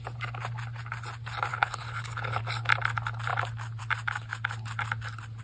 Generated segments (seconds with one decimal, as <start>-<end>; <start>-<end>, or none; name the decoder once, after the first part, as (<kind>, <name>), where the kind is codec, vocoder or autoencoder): 1.5-2.4 (codec, HILCodec)